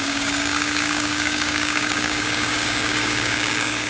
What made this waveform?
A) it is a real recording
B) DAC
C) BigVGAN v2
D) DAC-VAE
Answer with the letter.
B